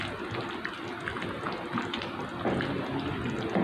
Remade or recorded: recorded